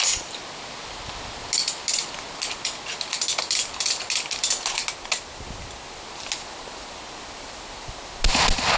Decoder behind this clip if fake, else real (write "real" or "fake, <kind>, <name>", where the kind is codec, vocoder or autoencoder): real